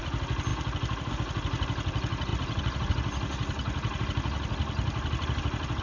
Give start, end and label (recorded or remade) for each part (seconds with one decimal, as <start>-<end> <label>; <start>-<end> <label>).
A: 0.0-5.8 recorded